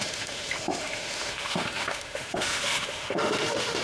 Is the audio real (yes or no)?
no